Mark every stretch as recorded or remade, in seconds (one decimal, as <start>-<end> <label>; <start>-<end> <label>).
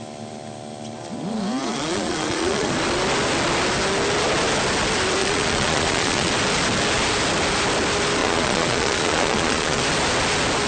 0.0-1.6 recorded; 1.6-2.7 remade; 2.7-5.2 recorded; 5.2-6.3 remade; 6.3-8.2 recorded; 8.2-9.8 remade; 9.8-10.7 recorded